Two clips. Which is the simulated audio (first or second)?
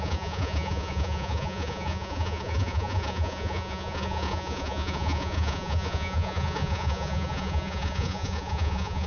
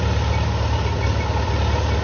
first